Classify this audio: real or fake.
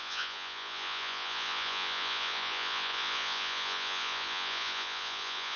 fake